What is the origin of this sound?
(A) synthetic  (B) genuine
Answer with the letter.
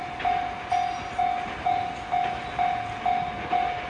B